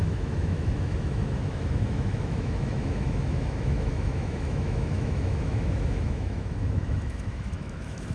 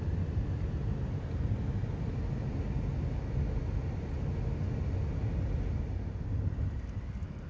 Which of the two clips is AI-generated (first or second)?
first